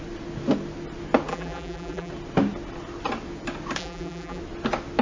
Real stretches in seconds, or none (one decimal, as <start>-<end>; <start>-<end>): 0.0-1.3; 2.1-3.8; 4.4-5.0